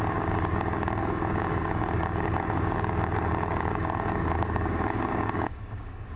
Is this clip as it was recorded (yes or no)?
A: no